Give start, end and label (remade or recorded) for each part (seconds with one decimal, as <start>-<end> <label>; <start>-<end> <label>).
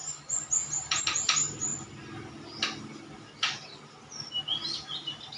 0.0-5.4 recorded